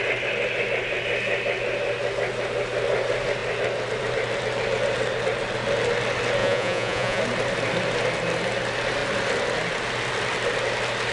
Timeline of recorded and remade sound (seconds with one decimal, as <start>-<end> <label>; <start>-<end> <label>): 0.0-6.4 recorded; 6.4-7.2 remade; 7.2-11.1 recorded